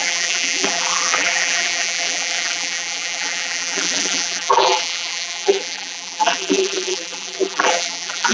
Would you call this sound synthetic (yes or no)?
yes